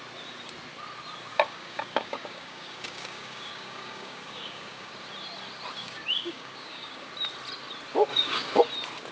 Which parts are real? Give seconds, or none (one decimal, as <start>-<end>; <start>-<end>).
0.0-1.3; 4.9-5.8; 7.1-8.1; 8.6-9.1